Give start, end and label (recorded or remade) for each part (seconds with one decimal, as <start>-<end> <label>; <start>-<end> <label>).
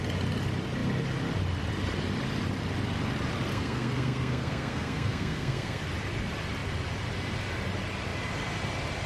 0.0-3.5 recorded; 3.5-5.8 remade; 5.8-9.1 recorded